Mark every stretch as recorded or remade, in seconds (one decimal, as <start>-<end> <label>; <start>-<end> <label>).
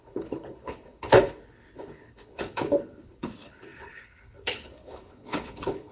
0.0-5.9 remade